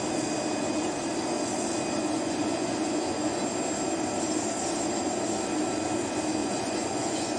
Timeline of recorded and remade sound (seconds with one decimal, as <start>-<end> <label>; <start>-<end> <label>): 0.0-2.0 recorded; 2.0-3.4 remade; 3.4-6.4 recorded; 6.4-7.4 remade